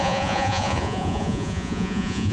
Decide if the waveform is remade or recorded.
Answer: remade